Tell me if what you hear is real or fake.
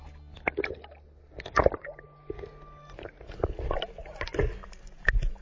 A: real